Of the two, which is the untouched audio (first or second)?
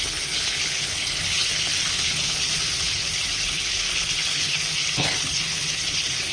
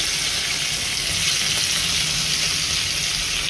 second